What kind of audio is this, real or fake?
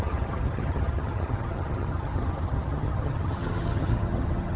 fake